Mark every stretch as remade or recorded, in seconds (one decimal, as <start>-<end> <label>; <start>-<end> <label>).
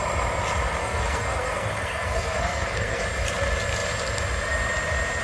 0.0-0.8 recorded; 0.8-3.0 remade; 3.0-5.2 recorded